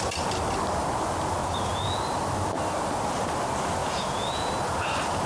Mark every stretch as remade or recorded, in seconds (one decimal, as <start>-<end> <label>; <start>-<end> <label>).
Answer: 0.0-1.4 recorded; 1.4-2.0 remade; 2.0-3.8 recorded; 3.8-4.5 remade; 4.5-5.3 recorded